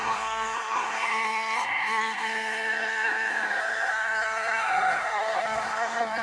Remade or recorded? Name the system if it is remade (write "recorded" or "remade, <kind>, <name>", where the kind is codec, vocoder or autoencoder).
remade, codec, SNAC